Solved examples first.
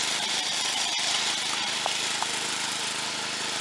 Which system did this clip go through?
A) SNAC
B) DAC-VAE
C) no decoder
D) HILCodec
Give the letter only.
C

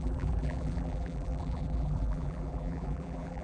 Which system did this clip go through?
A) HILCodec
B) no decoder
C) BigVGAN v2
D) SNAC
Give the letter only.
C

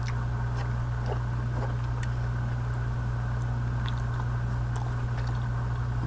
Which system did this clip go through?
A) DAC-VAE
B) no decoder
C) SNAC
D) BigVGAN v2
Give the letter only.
B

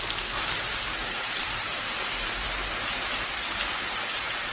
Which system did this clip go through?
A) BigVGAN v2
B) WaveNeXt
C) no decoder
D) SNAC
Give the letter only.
A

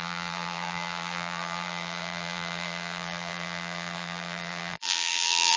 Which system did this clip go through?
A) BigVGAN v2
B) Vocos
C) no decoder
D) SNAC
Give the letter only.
A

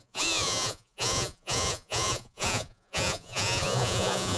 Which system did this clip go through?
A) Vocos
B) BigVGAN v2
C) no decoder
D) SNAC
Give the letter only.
A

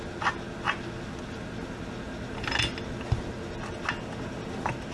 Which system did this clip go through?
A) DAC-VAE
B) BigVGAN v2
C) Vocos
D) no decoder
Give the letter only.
D